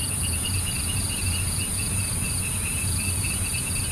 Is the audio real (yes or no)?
no